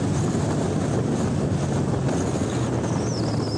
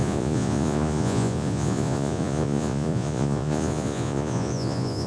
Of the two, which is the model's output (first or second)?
second